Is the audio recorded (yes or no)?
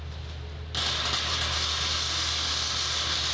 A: yes